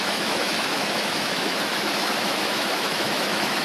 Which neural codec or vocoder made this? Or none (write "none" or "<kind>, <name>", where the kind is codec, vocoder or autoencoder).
autoencoder, DAC-VAE